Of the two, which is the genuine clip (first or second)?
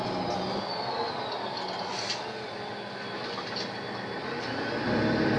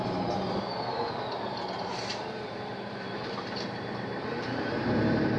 first